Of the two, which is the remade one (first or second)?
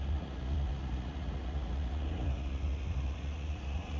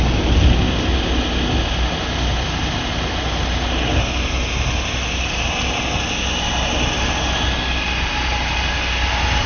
first